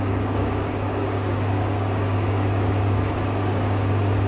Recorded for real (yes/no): no